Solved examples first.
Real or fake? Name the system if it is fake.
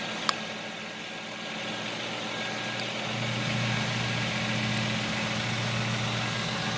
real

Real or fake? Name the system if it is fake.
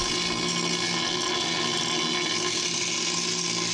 real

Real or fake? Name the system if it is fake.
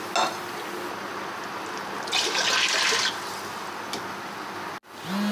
real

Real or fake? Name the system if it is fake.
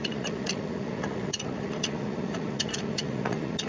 fake, vocoder, Vocos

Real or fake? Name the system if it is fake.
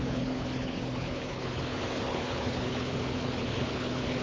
fake, codec, HILCodec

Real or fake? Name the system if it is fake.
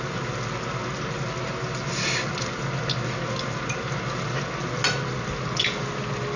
real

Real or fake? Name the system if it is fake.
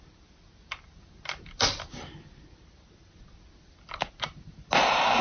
real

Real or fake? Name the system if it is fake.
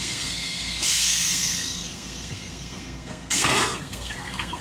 fake, codec, SNAC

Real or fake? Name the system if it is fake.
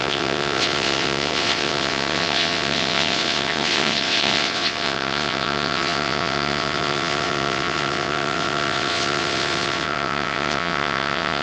fake, vocoder, WaveNeXt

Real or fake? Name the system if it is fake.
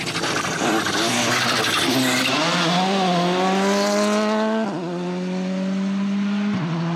real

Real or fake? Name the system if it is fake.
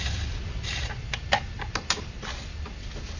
real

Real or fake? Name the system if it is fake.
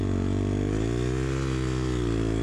real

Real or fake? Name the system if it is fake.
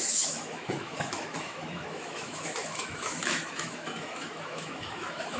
fake, autoencoder, DAC-VAE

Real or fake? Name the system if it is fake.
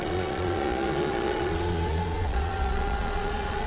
fake, vocoder, Vocos